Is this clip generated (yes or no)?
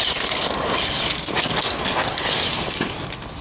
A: no